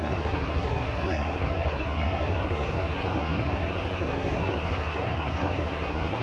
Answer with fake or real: fake